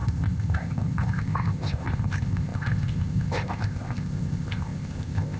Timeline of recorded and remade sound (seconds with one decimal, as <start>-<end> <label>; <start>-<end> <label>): 0.0-5.4 remade